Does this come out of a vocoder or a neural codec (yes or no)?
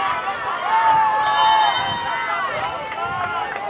no